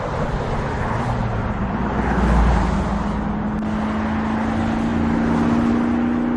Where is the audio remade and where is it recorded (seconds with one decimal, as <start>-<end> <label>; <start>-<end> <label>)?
0.0-6.4 recorded